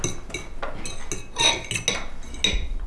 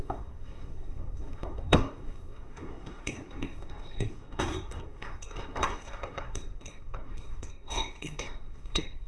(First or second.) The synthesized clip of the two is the second